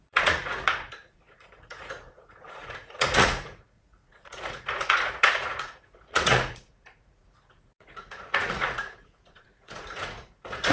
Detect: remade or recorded remade